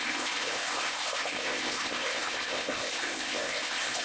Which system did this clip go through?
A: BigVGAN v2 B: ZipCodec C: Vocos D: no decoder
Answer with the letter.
B